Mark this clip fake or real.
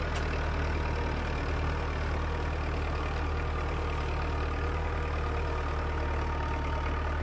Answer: real